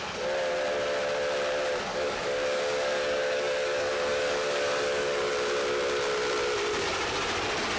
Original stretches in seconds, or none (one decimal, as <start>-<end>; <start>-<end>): 0.0-1.9; 5.3-7.8